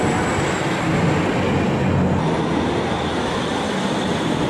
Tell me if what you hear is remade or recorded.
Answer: recorded